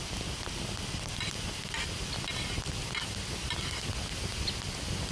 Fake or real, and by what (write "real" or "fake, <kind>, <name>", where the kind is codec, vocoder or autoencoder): real